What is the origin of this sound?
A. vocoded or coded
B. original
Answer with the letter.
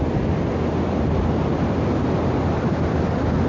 B